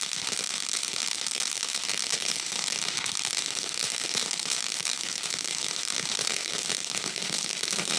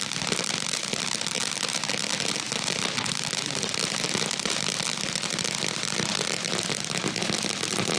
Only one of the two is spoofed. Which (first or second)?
first